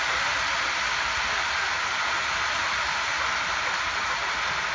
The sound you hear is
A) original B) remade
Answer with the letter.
A